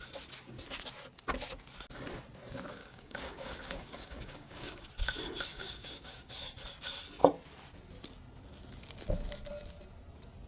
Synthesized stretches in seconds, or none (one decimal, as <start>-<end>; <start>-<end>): 2.8-4.9; 5.5-6.3

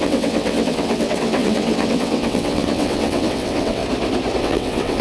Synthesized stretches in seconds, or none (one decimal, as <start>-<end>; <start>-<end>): 0.0-3.8; 4.4-5.0

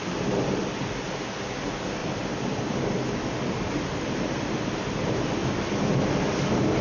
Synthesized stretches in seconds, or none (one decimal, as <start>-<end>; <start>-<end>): 2.0-3.2

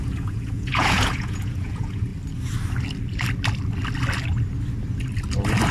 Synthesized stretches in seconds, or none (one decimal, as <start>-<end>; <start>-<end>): 0.0-2.1